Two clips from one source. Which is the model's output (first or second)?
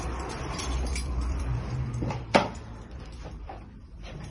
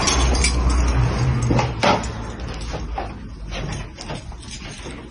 first